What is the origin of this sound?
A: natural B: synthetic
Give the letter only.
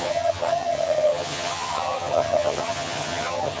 B